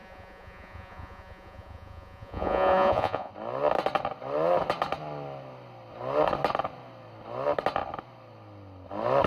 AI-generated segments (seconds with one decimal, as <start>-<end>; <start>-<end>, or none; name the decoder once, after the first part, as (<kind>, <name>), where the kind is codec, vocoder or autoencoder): 0.0-3.3 (vocoder, Vocos)